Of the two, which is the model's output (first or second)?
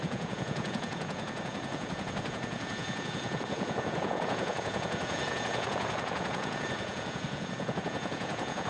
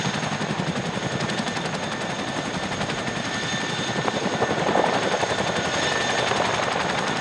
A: first